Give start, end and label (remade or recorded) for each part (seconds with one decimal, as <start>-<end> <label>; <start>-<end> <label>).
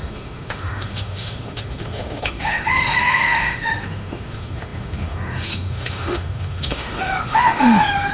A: 0.0-8.1 remade